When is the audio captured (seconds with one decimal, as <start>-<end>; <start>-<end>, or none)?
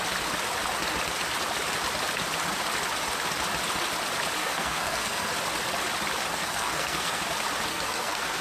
0.0-4.4; 5.3-6.3; 7.2-7.7